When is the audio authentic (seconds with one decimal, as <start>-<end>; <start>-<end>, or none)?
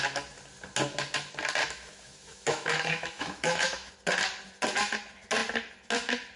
0.0-1.6; 3.9-6.4